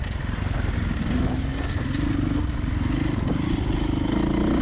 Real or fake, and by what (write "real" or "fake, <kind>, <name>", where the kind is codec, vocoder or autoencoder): real